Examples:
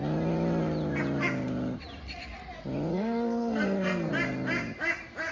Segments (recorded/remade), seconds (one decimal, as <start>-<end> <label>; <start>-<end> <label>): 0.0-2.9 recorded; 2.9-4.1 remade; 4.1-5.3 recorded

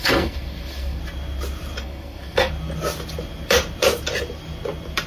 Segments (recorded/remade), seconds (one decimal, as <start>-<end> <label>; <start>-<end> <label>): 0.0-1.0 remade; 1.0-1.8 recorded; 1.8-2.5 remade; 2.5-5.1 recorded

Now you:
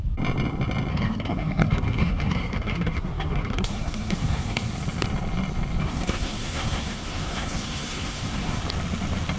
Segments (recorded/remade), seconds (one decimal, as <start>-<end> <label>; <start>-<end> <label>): 0.0-0.9 recorded; 0.9-4.7 remade; 4.7-5.8 recorded; 5.8-8.6 remade; 8.6-9.4 recorded

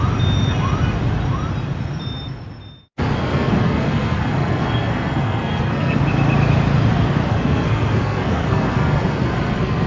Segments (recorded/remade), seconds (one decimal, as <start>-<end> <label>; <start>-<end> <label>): 0.0-3.2 recorded; 3.2-6.0 remade; 6.0-7.3 recorded; 7.3-9.9 remade